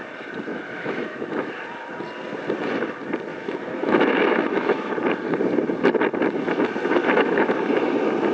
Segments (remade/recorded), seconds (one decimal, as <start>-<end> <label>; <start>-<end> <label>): 0.0-0.5 recorded; 0.5-1.5 remade; 1.5-3.3 recorded; 3.3-4.9 remade; 4.9-7.0 recorded; 7.0-7.5 remade; 7.5-8.3 recorded